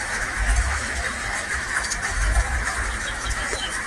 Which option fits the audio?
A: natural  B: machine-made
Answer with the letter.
B